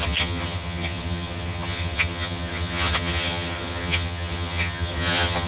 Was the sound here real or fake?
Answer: fake